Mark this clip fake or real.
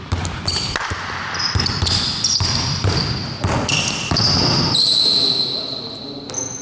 real